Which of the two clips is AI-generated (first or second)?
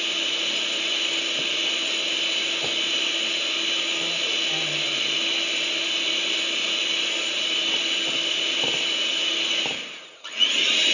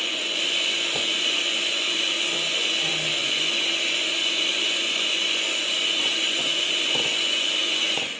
second